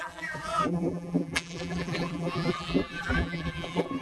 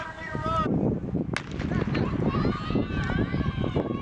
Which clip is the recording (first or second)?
second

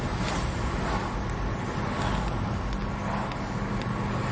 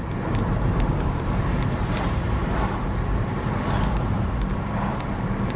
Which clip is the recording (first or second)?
first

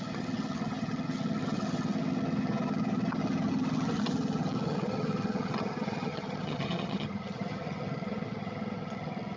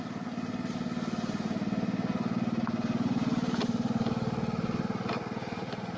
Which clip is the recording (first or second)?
second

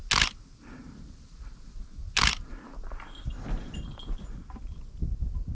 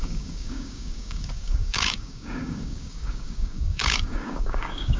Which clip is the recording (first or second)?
first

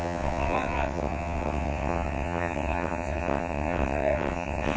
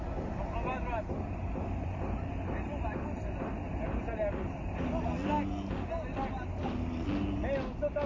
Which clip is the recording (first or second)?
second